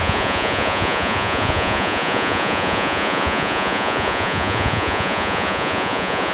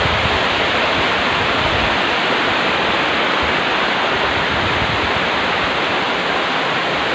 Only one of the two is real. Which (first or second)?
second